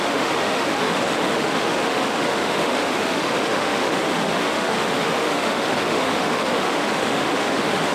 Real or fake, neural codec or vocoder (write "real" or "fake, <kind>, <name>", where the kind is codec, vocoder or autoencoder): fake, autoencoder, DAC-VAE